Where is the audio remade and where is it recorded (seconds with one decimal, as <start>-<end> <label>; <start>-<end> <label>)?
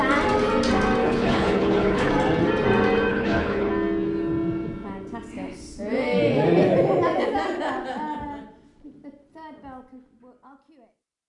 0.0-1.0 recorded; 1.0-2.1 remade; 2.1-3.1 recorded; 3.1-3.7 remade; 3.7-11.3 recorded